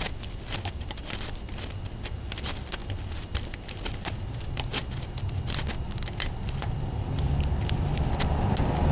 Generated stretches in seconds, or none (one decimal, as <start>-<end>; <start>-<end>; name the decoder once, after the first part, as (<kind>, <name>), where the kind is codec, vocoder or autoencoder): none